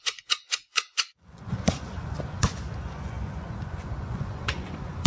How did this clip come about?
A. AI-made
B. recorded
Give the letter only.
A